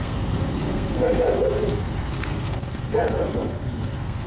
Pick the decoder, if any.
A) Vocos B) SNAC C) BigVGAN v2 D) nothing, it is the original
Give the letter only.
B